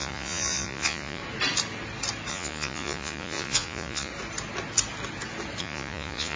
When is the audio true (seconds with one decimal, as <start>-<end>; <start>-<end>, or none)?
1.2-2.3; 4.1-5.6